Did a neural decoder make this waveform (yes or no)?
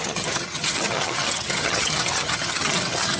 yes